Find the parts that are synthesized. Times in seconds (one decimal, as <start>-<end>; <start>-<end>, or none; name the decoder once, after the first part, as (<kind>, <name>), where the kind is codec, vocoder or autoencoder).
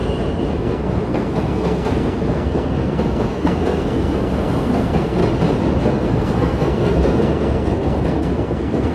0.5-5.2 (codec, SNAC); 5.8-8.9